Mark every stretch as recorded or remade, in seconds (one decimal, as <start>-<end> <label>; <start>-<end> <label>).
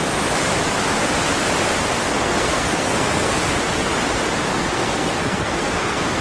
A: 0.0-2.1 recorded; 2.1-3.4 remade; 3.4-4.5 recorded; 4.5-6.2 remade